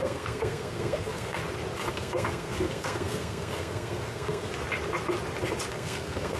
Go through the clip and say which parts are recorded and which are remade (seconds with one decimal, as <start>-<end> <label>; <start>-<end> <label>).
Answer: 0.0-1.4 remade; 1.4-1.9 recorded; 1.9-4.5 remade; 4.5-5.7 recorded; 5.7-6.4 remade

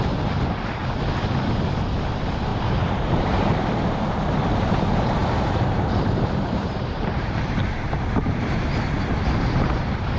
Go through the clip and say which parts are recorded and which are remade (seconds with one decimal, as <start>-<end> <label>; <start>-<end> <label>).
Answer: 0.0-2.5 recorded; 2.5-4.1 remade; 4.1-5.2 recorded; 5.2-7.6 remade; 7.6-10.2 recorded